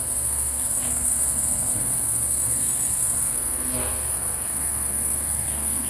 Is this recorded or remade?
remade